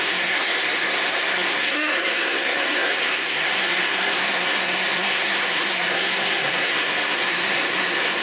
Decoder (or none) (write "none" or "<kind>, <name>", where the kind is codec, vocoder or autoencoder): codec, SNAC